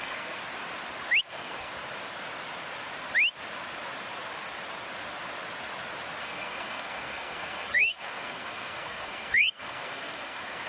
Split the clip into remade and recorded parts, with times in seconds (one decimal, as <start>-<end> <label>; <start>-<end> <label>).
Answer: 0.0-0.4 remade; 0.4-1.2 recorded; 1.2-1.7 remade; 1.7-6.2 recorded; 6.2-10.7 remade